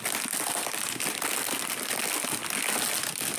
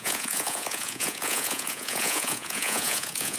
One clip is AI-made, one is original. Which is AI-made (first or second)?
second